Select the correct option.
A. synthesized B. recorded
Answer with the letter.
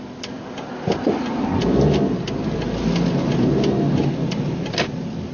B